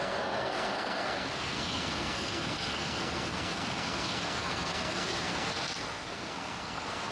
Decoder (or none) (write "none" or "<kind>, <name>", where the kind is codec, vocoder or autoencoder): codec, SNAC